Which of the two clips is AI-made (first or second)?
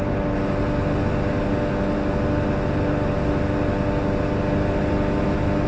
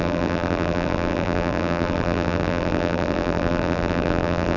second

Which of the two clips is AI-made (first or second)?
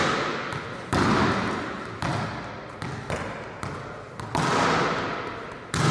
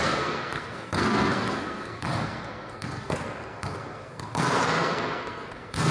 second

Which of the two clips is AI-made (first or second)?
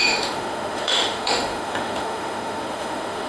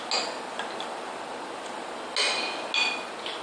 first